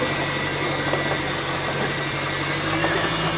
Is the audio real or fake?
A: real